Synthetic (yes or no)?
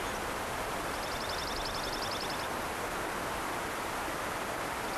no